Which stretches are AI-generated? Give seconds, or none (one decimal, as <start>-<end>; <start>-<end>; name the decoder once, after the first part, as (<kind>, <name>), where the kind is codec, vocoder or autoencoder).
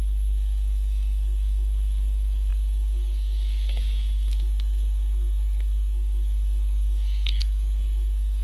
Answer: 0.0-8.4 (codec, SNAC)